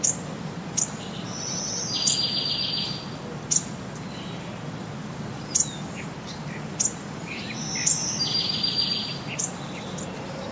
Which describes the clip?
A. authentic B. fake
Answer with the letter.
A